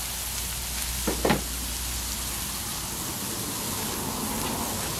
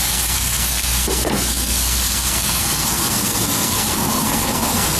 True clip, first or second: first